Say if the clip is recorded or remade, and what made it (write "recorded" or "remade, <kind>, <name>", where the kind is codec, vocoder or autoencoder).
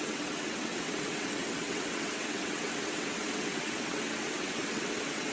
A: remade, vocoder, WaveNeXt